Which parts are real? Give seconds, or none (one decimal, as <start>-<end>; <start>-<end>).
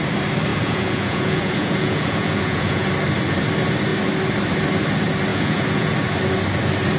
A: 0.0-0.5; 2.9-5.3; 5.9-7.0